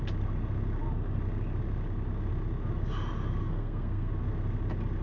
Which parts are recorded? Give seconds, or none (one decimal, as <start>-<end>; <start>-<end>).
0.0-3.4; 4.1-5.0